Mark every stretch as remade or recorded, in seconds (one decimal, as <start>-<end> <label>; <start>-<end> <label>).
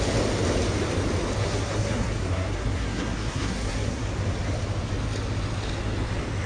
0.0-1.4 recorded; 1.4-4.1 remade; 4.1-6.5 recorded